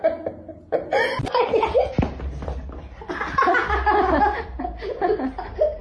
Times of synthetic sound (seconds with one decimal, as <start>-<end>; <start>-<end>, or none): 0.5-1.6